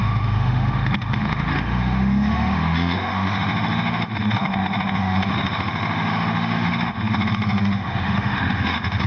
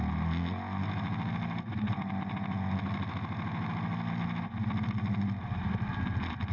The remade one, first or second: first